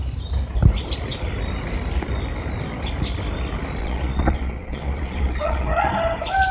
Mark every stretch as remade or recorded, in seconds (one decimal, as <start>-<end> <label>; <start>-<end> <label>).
0.0-3.8 recorded; 3.8-5.9 remade; 5.9-6.5 recorded